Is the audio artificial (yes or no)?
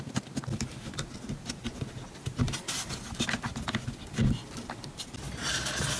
no